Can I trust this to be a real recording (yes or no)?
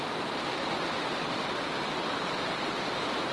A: yes